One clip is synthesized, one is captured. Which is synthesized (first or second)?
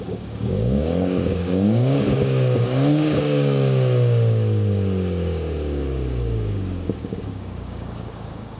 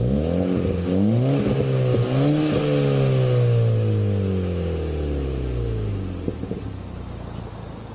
first